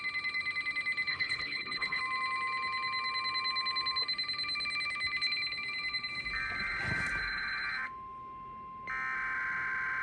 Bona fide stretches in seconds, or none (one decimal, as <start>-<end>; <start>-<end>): 0.0-1.1; 2.0-10.0